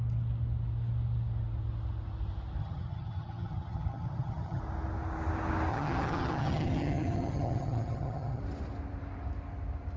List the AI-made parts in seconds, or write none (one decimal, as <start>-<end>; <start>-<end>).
2.6-4.6; 5.7-8.4